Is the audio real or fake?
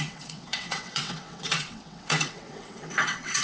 fake